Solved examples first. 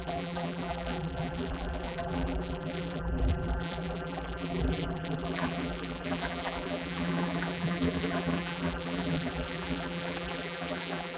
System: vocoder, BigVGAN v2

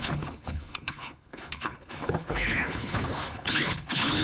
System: codec, HILCodec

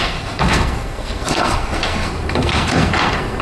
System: codec, SNAC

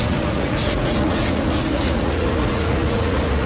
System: vocoder, Vocos